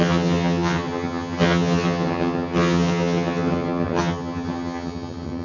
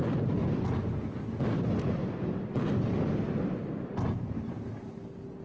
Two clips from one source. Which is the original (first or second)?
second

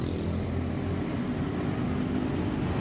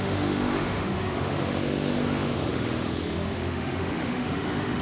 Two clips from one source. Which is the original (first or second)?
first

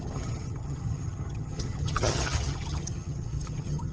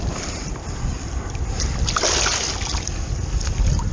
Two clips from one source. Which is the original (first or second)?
second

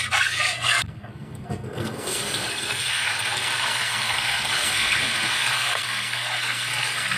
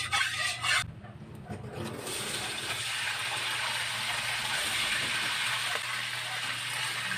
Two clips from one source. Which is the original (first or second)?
second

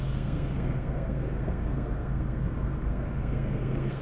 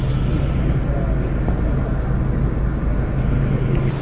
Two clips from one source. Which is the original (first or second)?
second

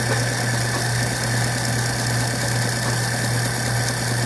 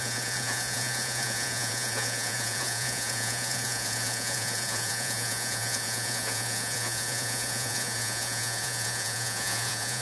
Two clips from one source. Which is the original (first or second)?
first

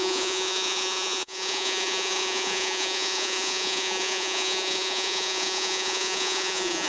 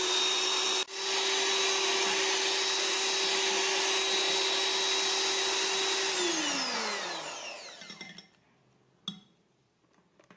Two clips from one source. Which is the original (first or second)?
second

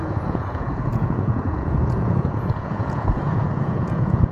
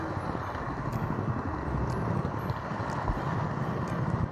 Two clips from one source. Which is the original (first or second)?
second